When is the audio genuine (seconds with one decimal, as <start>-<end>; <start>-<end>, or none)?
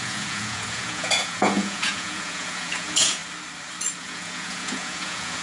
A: 3.2-4.0